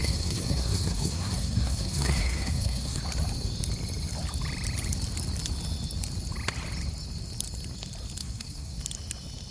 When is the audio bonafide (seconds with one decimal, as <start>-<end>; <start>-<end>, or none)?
3.0-8.2; 8.8-9.5